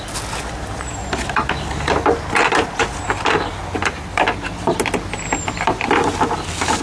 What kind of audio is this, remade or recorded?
recorded